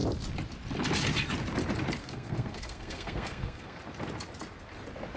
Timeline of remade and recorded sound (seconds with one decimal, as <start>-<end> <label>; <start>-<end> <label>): 0.0-2.0 recorded; 2.0-3.8 remade; 3.8-5.2 recorded

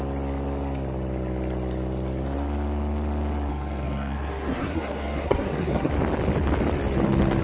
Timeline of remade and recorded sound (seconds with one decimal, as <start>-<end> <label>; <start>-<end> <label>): 0.0-3.5 recorded; 3.5-5.9 remade; 5.9-7.4 recorded

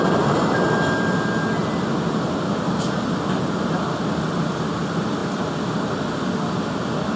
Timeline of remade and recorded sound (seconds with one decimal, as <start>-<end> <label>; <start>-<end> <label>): 0.0-7.2 recorded

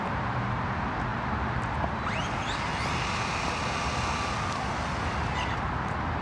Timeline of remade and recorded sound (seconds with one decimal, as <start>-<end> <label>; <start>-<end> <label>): 0.0-6.2 recorded

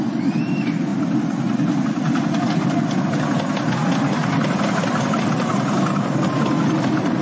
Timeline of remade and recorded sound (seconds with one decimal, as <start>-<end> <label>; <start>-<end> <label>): 0.0-7.2 recorded

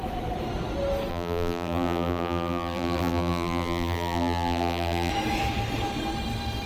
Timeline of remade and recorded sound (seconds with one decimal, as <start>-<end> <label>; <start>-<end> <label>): 0.0-1.1 recorded; 1.1-5.1 remade; 5.1-6.7 recorded